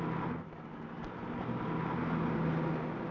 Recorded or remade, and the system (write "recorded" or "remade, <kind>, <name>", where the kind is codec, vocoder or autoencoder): recorded